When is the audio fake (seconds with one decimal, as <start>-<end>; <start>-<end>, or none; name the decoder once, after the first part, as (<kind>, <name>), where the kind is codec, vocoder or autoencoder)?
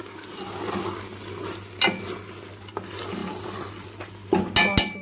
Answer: 3.2-4.1 (vocoder, BigVGAN v2)